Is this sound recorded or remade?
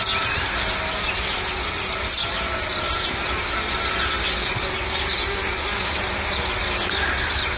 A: recorded